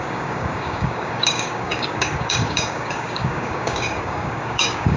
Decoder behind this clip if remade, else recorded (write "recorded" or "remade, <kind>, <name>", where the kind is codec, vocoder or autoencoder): remade, codec, DAC